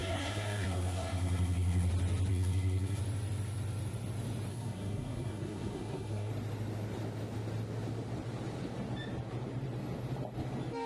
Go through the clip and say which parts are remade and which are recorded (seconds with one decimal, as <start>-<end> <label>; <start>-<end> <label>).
0.0-1.9 remade; 1.9-2.3 recorded; 2.3-3.0 remade; 3.0-4.5 recorded; 4.5-6.3 remade; 6.3-10.9 recorded